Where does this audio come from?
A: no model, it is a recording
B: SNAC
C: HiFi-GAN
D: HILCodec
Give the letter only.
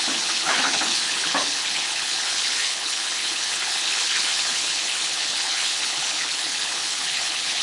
D